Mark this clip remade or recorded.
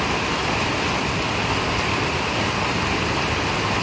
recorded